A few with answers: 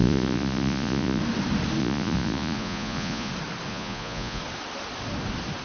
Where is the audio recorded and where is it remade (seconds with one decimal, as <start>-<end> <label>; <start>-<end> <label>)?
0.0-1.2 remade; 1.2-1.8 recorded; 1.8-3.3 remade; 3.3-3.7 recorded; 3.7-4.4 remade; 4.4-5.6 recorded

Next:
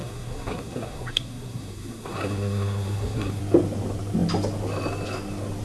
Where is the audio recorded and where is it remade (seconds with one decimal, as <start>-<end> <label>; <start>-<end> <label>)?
0.0-3.4 remade; 3.4-5.6 recorded

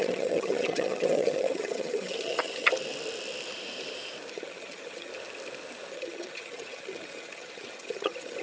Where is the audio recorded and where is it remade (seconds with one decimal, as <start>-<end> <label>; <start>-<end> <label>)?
0.0-2.7 remade; 2.7-4.3 recorded; 4.3-5.1 remade; 5.1-5.9 recorded; 5.9-8.4 remade

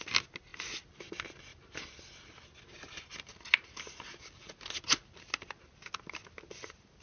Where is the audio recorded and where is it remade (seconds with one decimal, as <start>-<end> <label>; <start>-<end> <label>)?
0.0-7.0 recorded

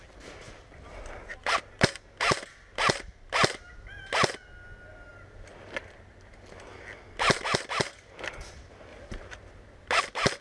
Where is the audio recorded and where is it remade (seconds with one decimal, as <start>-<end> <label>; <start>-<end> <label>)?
0.0-1.3 recorded; 1.3-1.9 remade; 1.9-8.9 recorded; 8.9-10.0 remade; 10.0-10.4 recorded

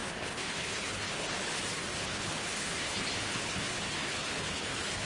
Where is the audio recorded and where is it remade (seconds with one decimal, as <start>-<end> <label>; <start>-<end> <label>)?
0.0-1.5 remade; 1.5-1.9 recorded; 1.9-5.1 remade

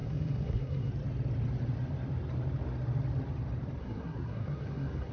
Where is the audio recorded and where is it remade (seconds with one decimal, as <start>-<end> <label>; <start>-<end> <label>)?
0.0-0.9 remade; 0.9-3.8 recorded; 3.8-5.1 remade